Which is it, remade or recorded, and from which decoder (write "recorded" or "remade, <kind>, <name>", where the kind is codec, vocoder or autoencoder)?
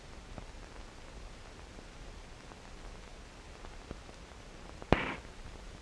recorded